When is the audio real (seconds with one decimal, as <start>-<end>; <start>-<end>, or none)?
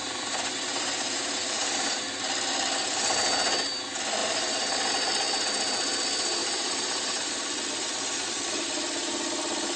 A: 2.0-4.2; 4.9-6.4; 7.3-9.8